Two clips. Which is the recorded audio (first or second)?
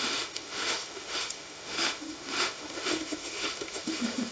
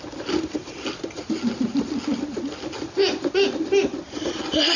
second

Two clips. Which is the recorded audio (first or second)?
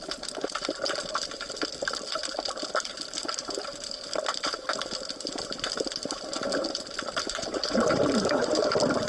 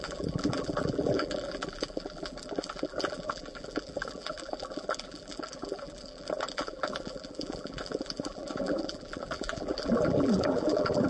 first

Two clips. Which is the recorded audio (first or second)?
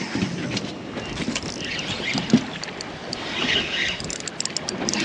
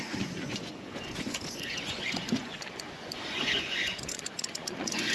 first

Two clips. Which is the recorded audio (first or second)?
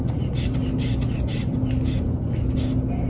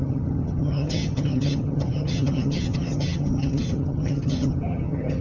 first